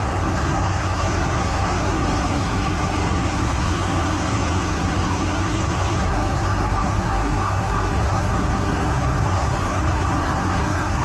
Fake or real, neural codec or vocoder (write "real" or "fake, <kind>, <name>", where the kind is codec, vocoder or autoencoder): fake, codec, SNAC